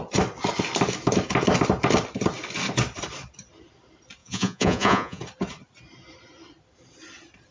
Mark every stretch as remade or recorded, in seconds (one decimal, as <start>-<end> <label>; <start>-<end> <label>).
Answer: 0.0-4.2 recorded; 4.2-5.2 remade; 5.2-7.5 recorded